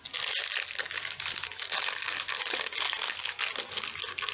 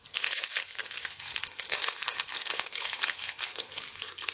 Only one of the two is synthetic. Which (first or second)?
second